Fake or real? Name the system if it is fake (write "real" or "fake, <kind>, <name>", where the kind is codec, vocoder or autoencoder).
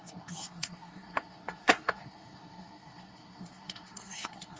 fake, codec, SNAC